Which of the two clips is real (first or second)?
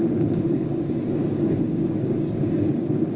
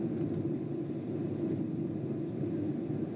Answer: second